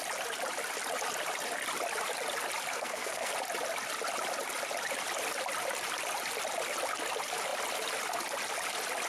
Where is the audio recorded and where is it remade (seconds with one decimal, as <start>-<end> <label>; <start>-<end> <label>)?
0.0-2.7 recorded; 2.7-3.3 remade; 3.3-9.1 recorded